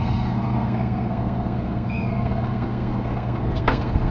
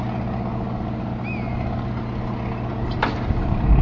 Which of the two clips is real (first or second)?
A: second